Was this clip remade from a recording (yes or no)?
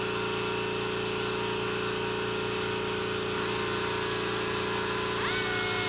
no